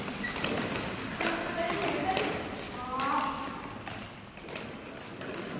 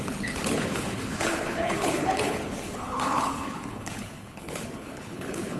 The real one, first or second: first